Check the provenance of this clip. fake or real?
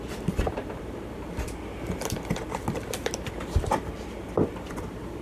fake